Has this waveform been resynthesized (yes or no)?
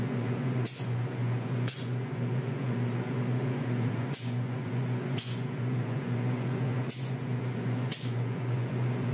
yes